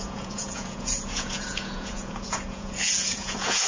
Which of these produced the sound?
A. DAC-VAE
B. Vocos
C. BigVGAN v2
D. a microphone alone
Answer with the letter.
B